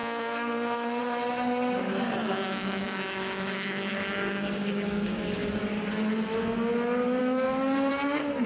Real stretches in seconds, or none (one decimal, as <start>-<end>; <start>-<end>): 1.0-2.2; 5.5-7.2; 7.9-8.5